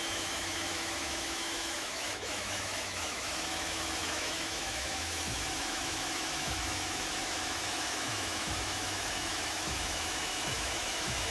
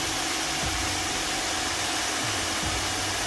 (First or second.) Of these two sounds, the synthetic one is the first